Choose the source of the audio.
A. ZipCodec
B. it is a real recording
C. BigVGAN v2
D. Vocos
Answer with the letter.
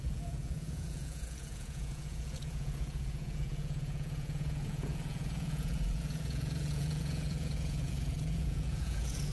D